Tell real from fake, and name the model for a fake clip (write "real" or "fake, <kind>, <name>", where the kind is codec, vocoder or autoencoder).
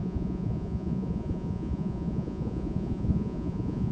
fake, vocoder, Vocos